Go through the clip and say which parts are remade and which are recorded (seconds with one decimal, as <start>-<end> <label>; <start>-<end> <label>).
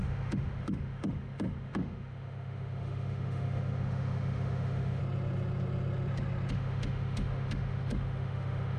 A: 0.0-5.0 remade; 5.0-6.5 recorded; 6.5-8.8 remade